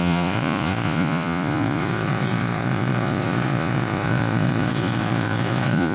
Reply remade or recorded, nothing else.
remade